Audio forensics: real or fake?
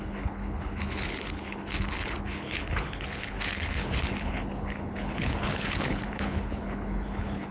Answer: fake